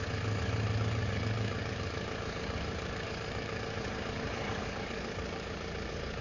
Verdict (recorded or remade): remade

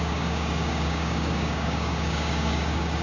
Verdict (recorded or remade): remade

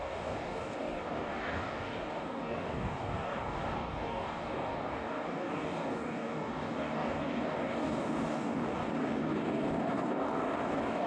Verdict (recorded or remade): remade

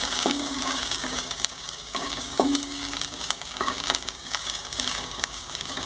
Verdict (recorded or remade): remade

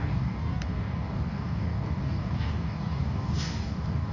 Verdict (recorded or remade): remade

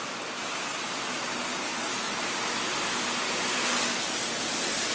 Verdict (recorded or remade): recorded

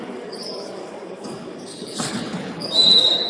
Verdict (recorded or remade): remade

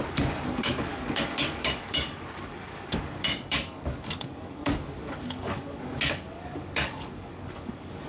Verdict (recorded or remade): remade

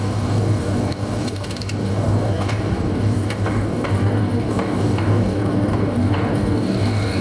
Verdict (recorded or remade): remade